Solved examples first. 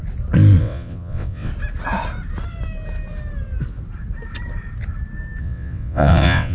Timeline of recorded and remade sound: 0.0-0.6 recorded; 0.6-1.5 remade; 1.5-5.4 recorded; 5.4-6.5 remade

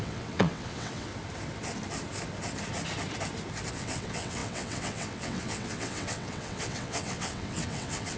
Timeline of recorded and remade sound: 0.0-1.1 remade; 1.1-3.7 recorded; 3.7-8.2 remade